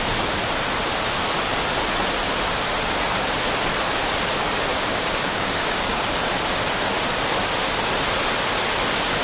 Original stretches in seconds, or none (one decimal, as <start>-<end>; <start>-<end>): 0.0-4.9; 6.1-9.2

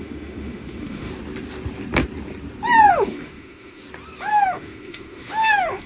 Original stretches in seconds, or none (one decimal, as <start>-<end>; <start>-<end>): 1.1-2.9; 3.8-4.3

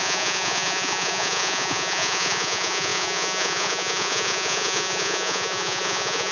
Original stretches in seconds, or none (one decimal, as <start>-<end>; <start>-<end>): none